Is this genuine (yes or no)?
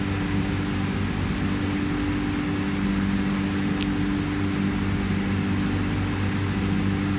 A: yes